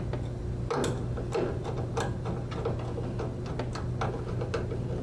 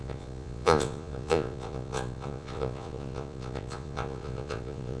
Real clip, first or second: first